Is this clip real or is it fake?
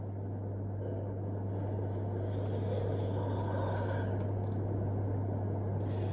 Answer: real